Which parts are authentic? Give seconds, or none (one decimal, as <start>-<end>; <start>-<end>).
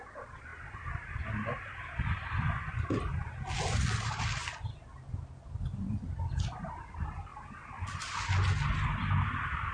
0.0-9.7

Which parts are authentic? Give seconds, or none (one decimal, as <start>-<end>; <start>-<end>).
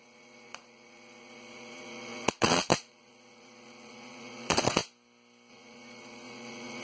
4.8-5.5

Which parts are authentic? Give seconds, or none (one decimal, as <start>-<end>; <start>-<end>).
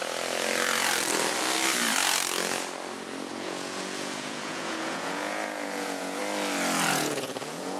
0.0-3.3; 6.2-6.9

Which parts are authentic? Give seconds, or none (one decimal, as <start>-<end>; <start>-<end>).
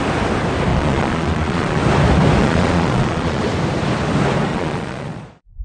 0.0-0.7; 1.8-2.4; 3.4-4.5